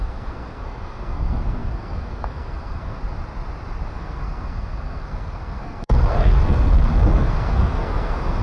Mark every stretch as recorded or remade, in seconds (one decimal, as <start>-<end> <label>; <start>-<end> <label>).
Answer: 0.0-3.0 remade; 3.0-3.9 recorded; 3.9-8.4 remade